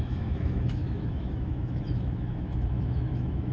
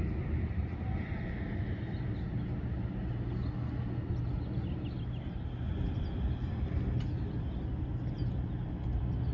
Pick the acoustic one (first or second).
second